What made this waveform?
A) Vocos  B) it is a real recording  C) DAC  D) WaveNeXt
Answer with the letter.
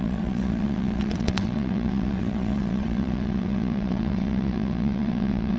D